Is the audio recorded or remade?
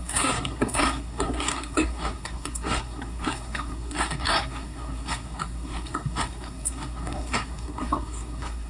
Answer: remade